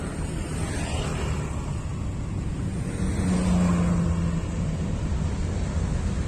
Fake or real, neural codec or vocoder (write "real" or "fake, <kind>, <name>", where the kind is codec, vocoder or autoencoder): real